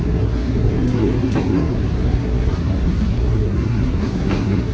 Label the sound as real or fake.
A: fake